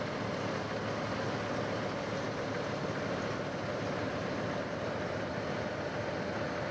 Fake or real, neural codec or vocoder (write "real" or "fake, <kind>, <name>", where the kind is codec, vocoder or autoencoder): real